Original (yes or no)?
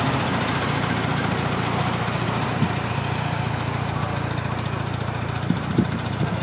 no